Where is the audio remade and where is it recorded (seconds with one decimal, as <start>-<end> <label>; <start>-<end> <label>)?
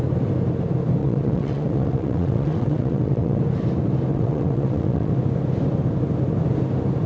0.0-1.0 recorded; 1.0-3.4 remade; 3.4-4.1 recorded; 4.1-5.1 remade; 5.1-7.1 recorded